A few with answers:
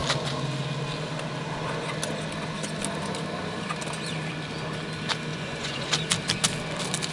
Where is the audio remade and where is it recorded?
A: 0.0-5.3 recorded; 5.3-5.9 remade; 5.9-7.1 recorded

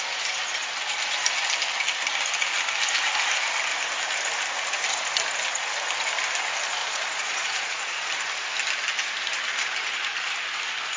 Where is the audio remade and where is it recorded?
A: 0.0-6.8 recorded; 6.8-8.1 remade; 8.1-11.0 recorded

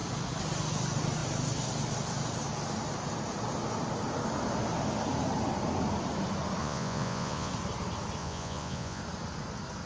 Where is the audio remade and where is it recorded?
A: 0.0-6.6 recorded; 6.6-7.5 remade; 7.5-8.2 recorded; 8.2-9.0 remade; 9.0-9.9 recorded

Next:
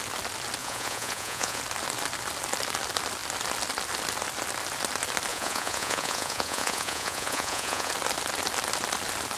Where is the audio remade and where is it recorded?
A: 0.0-0.6 recorded; 0.6-1.6 remade; 1.6-5.3 recorded; 5.3-7.9 remade; 7.9-9.4 recorded

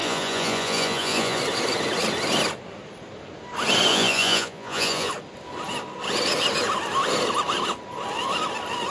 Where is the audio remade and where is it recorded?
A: 0.0-1.4 remade; 1.4-3.9 recorded; 3.9-5.1 remade; 5.1-8.9 recorded

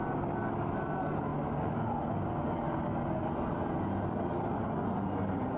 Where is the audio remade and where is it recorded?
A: 0.0-5.6 recorded